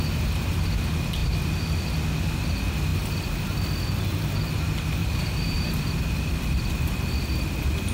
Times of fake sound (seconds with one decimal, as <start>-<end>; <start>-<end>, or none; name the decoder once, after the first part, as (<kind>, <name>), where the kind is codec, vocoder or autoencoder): 5.0-5.9 (vocoder, BigVGAN v2)